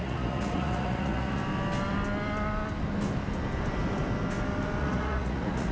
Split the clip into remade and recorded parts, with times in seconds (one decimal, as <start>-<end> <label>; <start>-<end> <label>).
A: 0.0-1.4 remade; 1.4-4.8 recorded; 4.8-5.7 remade